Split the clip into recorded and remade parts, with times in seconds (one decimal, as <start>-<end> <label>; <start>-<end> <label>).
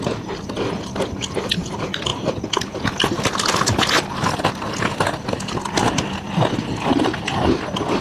0.0-8.0 recorded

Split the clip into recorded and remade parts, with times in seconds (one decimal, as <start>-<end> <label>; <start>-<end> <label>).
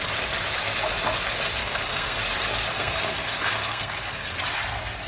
0.0-1.6 recorded; 1.6-2.2 remade; 2.2-2.7 recorded; 2.7-4.3 remade; 4.3-5.1 recorded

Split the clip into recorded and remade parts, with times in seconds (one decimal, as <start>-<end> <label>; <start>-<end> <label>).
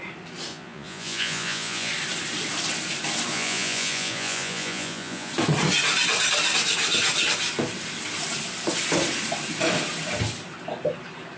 0.0-0.5 recorded; 0.5-1.9 remade; 1.9-3.3 recorded; 3.3-5.3 remade; 5.3-11.4 recorded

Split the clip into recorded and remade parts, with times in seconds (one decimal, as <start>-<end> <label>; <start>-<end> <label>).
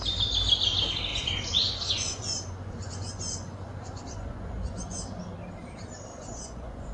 0.0-1.1 recorded; 1.1-5.0 remade; 5.0-6.1 recorded; 6.1-6.9 remade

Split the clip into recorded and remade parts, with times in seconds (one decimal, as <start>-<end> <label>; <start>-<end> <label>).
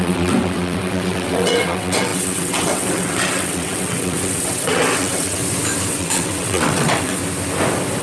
0.0-5.4 remade; 5.4-5.9 recorded; 5.9-7.2 remade; 7.2-8.0 recorded